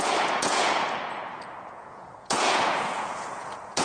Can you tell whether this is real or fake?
fake